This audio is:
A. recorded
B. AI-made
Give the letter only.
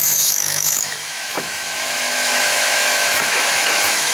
B